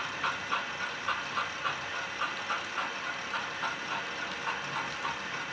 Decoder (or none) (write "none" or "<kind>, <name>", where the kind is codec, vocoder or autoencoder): none